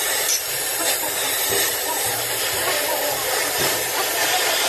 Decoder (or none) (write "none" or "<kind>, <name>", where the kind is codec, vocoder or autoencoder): none